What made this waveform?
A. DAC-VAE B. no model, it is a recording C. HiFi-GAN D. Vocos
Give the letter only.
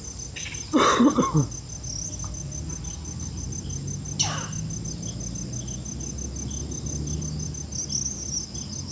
B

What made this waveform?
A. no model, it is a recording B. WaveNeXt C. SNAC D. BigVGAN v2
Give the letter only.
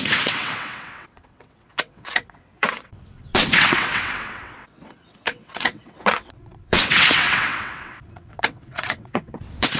B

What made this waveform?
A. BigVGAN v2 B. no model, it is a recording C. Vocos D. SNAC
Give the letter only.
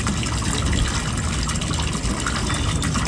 B